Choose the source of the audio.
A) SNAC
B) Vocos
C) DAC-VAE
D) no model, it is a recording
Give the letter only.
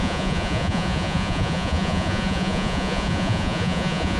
B